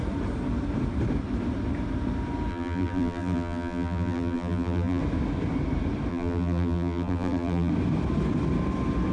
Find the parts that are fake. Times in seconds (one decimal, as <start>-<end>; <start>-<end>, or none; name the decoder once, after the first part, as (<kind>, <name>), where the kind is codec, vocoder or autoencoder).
2.5-5.0 (vocoder, BigVGAN v2); 6.1-7.7